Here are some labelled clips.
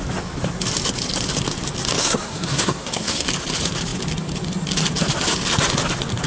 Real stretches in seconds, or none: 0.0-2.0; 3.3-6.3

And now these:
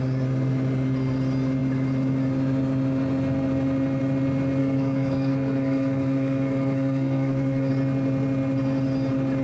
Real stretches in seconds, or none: 0.0-4.6; 7.7-9.4

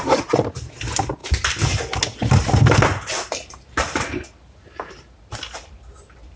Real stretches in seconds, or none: 0.0-6.4